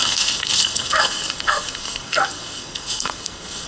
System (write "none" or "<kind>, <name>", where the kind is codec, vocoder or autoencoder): codec, SNAC